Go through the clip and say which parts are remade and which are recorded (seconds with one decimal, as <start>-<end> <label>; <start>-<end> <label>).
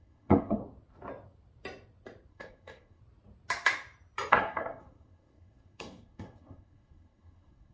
0.0-0.6 remade; 0.6-2.3 recorded; 2.3-3.0 remade; 3.0-4.3 recorded; 4.3-7.7 remade